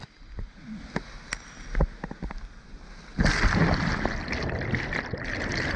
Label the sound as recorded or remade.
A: recorded